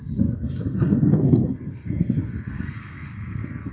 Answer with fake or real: fake